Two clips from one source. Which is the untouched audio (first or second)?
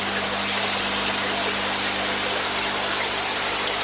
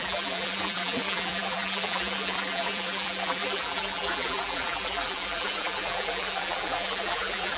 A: first